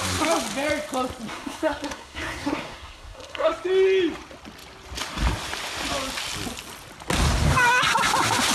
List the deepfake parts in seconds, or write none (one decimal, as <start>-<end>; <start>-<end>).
1.3-3.5